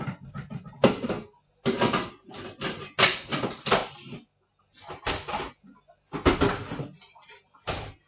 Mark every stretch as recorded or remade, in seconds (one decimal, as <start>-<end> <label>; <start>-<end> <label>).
0.0-8.1 recorded